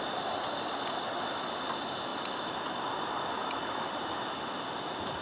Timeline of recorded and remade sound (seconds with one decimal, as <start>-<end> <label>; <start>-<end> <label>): 0.0-5.2 recorded